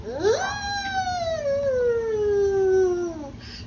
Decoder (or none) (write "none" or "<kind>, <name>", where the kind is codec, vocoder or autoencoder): none